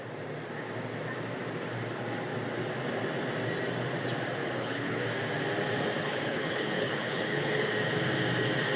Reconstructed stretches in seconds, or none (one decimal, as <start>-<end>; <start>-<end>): 4.4-5.0; 6.0-7.6